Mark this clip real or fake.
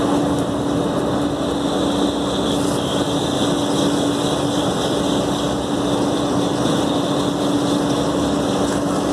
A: real